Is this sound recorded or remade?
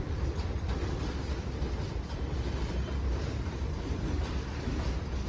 remade